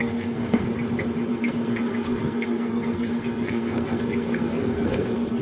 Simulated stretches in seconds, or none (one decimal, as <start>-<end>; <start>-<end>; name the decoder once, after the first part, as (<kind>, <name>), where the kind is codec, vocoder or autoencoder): 0.0-0.7 (codec, SNAC); 1.3-5.4